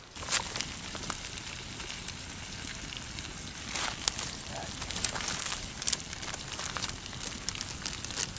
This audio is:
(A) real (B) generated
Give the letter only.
A